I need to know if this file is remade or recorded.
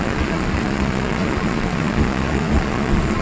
remade